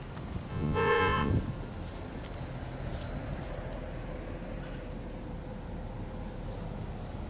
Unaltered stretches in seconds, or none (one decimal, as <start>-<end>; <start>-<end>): 0.0-0.5; 1.3-7.3